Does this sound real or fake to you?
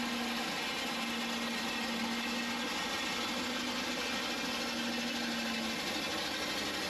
real